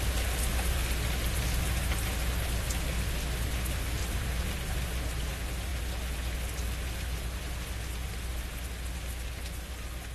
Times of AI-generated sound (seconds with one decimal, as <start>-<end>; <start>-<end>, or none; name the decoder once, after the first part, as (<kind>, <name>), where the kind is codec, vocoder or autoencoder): none